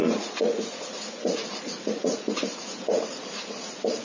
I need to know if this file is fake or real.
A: fake